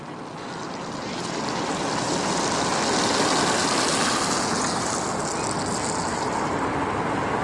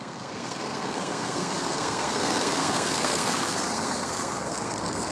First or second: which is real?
first